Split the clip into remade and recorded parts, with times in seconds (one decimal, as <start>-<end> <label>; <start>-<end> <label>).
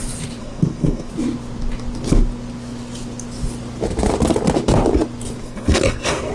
0.0-0.4 recorded; 0.4-1.1 remade; 1.1-5.4 recorded; 5.4-6.3 remade